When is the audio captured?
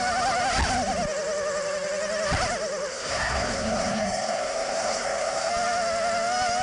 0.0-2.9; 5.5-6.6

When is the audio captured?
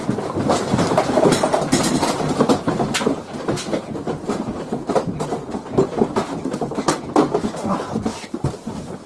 0.0-9.1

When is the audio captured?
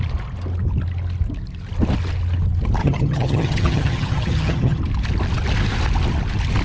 0.0-2.8; 4.8-6.6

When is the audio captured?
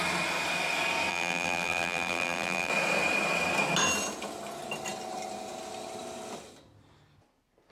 0.0-1.1; 2.7-7.7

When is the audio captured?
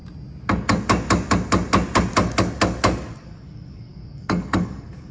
0.0-3.1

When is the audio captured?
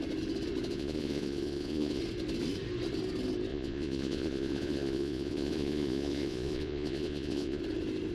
0.0-0.7; 2.0-3.5; 7.6-8.1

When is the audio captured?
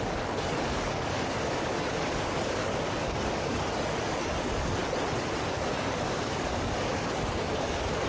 4.8-5.5